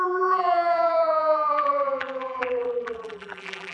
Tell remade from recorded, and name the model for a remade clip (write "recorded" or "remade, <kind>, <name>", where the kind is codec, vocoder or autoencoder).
remade, vocoder, BigVGAN v2